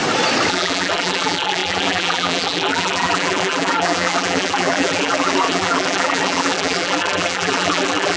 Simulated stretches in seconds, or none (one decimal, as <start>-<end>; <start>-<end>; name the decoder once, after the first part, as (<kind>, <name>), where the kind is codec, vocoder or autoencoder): 0.5-8.2 (vocoder, BigVGAN v2)